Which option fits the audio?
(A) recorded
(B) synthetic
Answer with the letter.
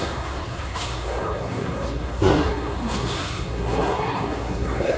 B